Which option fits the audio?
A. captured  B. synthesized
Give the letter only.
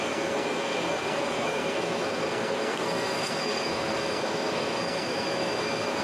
B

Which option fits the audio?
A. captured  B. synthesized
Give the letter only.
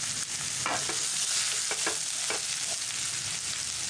A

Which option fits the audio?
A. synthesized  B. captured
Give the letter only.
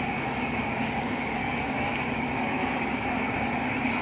A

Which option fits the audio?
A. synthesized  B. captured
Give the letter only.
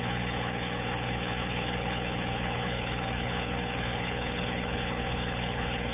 A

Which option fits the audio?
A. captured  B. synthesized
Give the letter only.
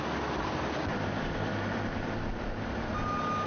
A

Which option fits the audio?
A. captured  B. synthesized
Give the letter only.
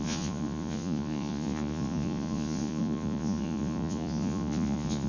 B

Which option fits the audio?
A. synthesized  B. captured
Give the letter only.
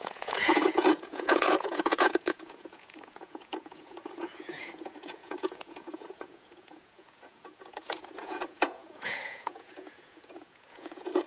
A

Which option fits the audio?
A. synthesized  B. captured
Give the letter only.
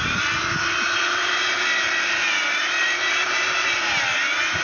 A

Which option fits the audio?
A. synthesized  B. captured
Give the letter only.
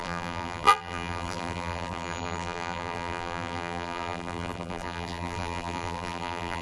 A